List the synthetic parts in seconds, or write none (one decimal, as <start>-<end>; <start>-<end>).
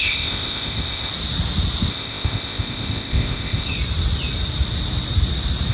0.0-1.1; 1.9-3.7